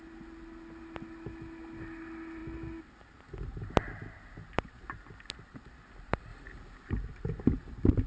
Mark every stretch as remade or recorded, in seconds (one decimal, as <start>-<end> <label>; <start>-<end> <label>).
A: 0.0-8.1 recorded